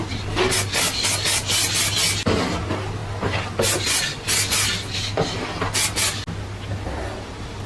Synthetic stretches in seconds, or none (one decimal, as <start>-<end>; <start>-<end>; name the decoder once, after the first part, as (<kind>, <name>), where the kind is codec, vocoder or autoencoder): none

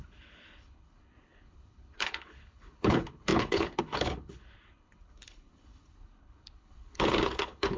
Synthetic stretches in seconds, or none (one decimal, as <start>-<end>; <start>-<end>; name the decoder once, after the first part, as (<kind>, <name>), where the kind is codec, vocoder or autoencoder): 0.0-7.8 (codec, HILCodec)

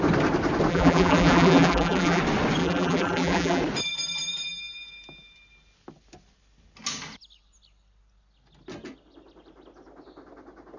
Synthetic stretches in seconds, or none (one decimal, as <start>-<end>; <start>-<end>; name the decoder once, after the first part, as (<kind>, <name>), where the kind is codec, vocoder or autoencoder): 0.7-2.2 (vocoder, BigVGAN v2); 2.6-3.6

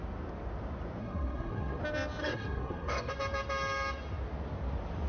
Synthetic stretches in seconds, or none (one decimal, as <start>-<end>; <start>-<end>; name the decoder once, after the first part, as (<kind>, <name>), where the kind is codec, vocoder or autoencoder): 1.0-1.8 (codec, SNAC); 2.2-3.1